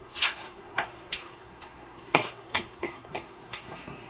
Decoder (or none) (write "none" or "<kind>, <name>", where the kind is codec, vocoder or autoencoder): codec, SNAC